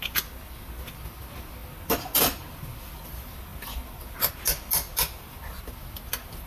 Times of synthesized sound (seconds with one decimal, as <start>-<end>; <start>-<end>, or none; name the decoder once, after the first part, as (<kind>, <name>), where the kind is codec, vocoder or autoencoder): none